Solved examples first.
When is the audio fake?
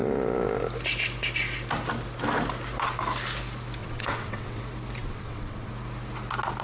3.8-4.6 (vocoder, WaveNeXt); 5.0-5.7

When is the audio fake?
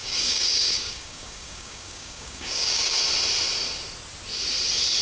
0.0-3.0 (codec, DAC)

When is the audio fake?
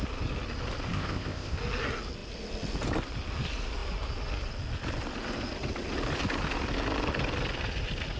0.9-1.6 (codec, ZipCodec)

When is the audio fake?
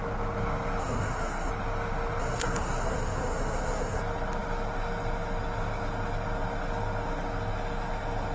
0.8-1.5 (codec, SNAC); 2.2-4.0